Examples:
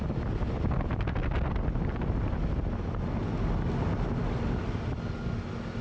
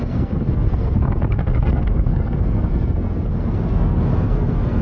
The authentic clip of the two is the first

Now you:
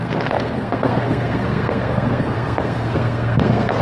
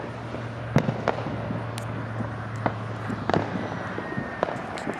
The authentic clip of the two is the second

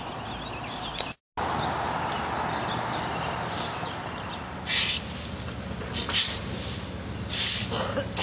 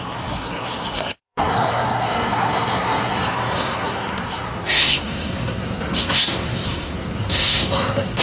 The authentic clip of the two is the first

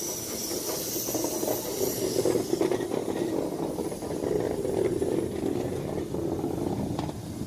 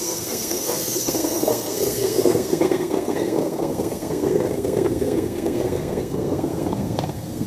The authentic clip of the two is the first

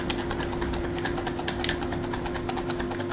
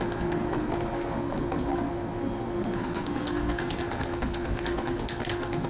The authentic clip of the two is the first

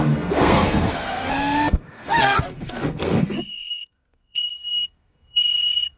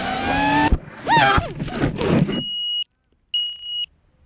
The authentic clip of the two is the second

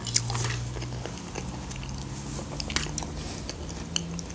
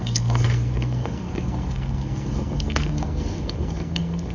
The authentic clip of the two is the first